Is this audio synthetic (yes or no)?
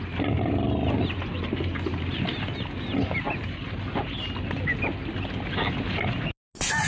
no